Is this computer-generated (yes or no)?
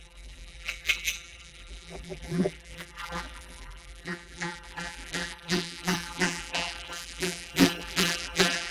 yes